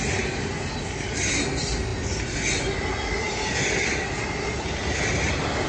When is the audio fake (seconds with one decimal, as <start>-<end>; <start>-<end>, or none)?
none